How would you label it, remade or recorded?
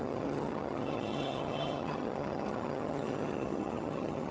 remade